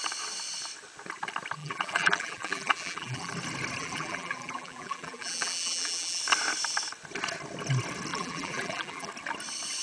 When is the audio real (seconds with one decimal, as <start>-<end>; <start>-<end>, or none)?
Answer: 0.0-1.6; 3.3-3.8; 6.2-8.1; 9.1-9.8